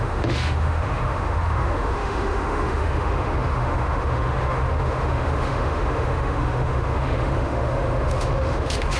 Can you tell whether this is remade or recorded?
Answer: remade